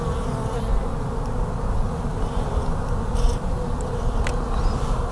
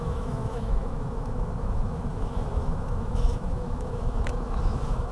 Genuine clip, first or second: first